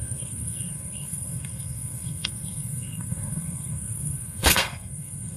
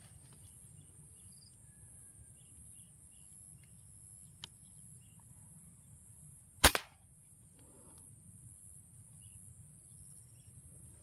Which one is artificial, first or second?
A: first